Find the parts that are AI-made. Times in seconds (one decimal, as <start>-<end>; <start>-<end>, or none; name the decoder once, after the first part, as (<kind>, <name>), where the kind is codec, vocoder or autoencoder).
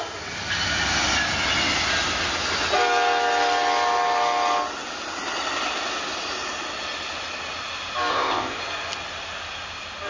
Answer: 8.1-8.6 (codec, ZipCodec)